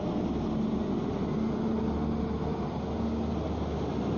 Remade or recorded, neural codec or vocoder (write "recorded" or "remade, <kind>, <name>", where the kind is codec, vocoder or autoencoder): recorded